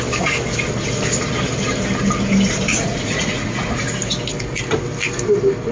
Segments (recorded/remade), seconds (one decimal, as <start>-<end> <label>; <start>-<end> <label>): 0.0-2.7 recorded; 2.7-3.7 remade; 3.7-5.7 recorded